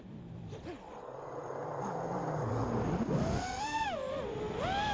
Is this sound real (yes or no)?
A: yes